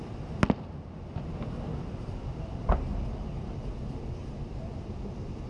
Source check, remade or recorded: remade